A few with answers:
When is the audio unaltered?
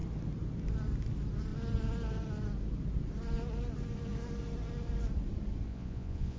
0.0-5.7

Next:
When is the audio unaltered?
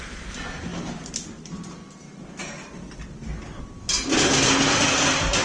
0.0-5.4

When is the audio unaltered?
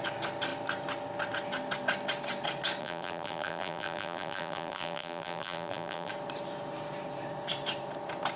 0.0-2.8; 6.1-8.4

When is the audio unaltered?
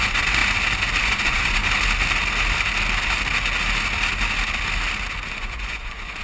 0.4-1.0; 1.6-5.3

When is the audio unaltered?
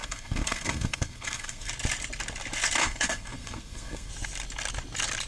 1.7-2.8; 4.1-5.3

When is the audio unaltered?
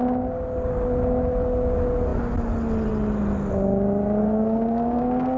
0.0-4.2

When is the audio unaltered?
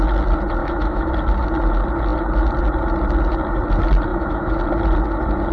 0.0-0.6; 1.1-4.1; 4.6-5.5